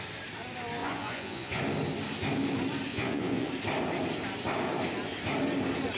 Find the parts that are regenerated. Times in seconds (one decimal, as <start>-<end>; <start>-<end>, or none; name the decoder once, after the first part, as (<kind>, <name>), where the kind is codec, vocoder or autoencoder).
0.8-1.6 (vocoder, Vocos); 2.9-3.5